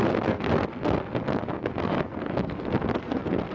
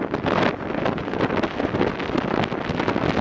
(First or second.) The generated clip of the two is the first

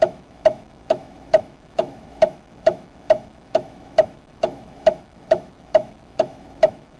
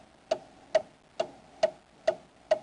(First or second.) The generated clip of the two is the first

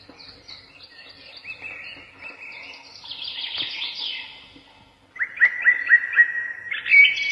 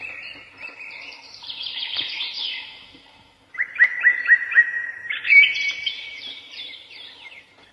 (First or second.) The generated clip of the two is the second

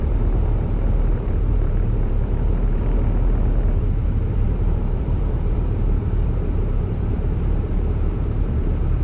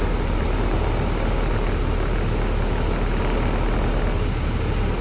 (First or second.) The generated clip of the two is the first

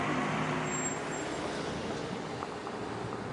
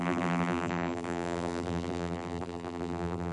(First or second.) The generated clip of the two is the second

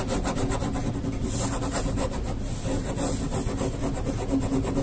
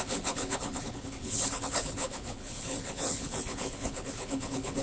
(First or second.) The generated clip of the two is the second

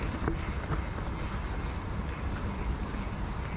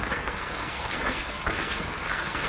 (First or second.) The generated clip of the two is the second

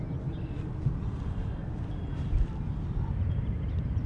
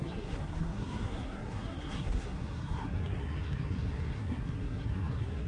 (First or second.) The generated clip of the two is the second